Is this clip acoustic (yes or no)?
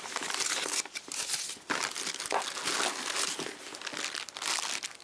yes